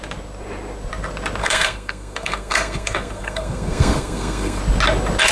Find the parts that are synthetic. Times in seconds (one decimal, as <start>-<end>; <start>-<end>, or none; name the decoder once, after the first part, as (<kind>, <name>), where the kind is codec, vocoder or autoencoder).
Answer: 1.4-4.6 (codec, SNAC)